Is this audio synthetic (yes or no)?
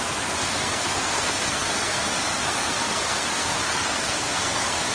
yes